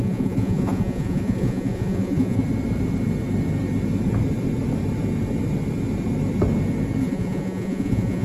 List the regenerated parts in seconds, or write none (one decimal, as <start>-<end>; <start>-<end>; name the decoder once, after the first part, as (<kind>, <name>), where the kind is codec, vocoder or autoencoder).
0.0-2.4 (vocoder, Vocos); 7.0-8.2